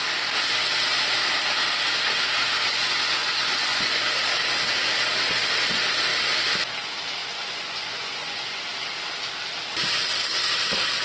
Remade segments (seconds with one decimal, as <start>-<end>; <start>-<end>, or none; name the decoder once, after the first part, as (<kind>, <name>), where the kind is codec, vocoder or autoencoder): 2.7-4.2 (vocoder, Vocos); 7.2-8.6